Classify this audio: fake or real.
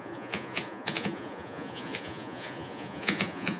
fake